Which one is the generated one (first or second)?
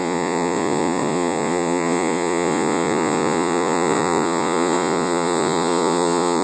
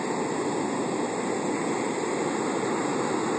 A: first